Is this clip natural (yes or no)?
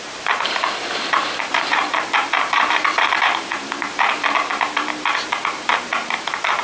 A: no